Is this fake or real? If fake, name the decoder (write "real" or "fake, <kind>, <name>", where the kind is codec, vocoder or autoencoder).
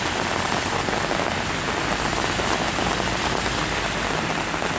real